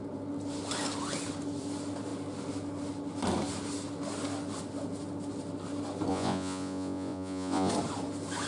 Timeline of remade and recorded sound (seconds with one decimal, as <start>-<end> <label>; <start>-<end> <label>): 0.0-6.1 recorded; 6.1-7.7 remade; 7.7-8.5 recorded